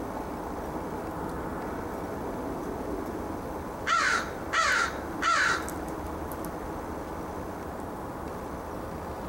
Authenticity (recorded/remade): recorded